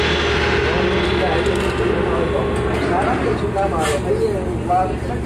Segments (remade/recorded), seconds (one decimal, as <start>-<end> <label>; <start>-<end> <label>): 0.0-5.3 recorded